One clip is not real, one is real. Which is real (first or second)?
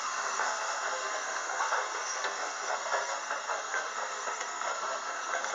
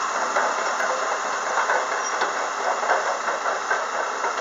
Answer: second